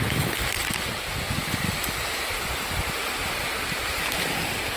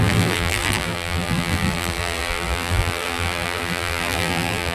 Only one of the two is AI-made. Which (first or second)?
second